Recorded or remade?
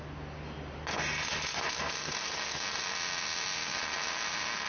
recorded